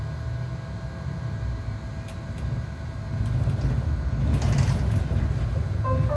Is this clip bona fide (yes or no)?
yes